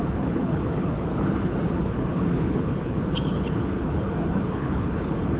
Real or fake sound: fake